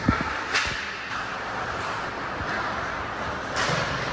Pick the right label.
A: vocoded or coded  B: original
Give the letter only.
B